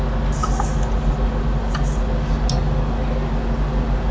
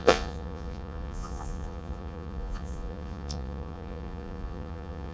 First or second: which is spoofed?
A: second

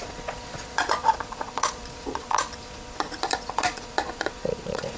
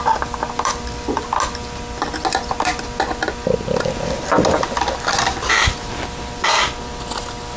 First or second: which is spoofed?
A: first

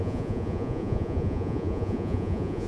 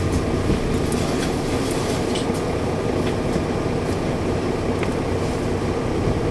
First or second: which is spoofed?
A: first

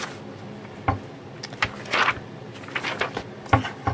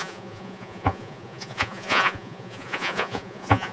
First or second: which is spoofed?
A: second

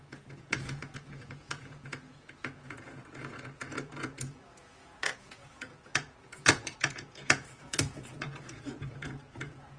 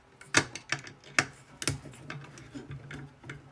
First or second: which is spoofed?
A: first